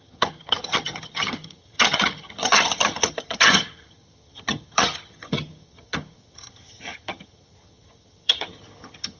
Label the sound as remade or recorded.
remade